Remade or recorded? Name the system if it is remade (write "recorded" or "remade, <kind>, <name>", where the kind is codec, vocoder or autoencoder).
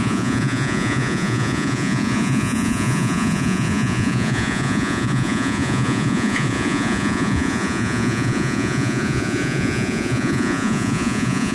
remade, vocoder, Vocos